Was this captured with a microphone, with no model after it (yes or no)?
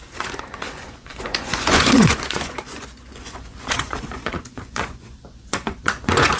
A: no